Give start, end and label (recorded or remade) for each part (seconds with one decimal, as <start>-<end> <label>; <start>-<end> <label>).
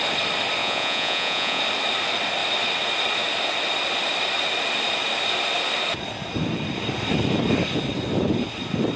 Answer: 0.0-0.6 recorded; 0.6-1.6 remade; 1.6-9.0 recorded